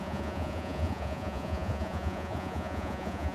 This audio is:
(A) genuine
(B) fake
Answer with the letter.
B